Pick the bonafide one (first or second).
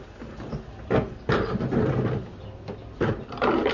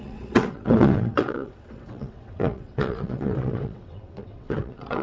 first